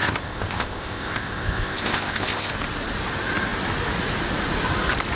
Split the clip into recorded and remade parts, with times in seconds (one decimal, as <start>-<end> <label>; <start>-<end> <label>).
0.0-2.5 remade; 2.5-5.2 recorded